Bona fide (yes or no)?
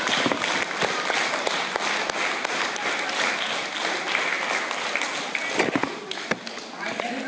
yes